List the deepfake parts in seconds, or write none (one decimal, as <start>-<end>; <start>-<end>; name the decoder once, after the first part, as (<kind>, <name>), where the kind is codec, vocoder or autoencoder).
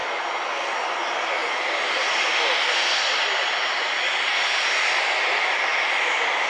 none